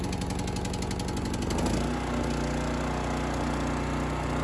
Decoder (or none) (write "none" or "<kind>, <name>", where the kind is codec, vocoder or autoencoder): none